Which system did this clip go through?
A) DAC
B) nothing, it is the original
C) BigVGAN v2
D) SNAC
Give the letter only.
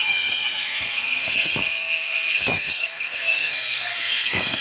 D